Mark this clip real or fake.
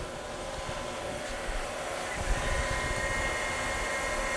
real